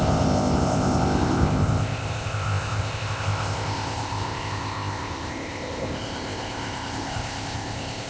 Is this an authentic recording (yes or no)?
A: no